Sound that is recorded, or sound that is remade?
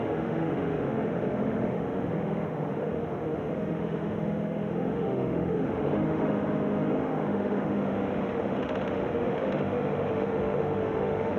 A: remade